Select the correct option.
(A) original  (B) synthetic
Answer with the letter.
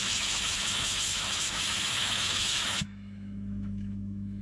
B